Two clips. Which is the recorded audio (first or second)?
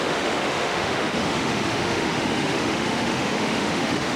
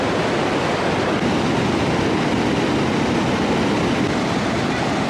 second